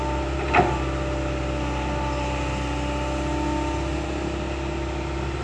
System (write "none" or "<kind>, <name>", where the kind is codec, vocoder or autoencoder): none